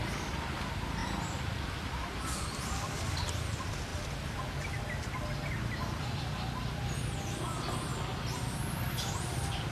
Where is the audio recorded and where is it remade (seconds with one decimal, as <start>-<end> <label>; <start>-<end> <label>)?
0.0-3.9 recorded; 3.9-5.5 remade; 5.5-9.7 recorded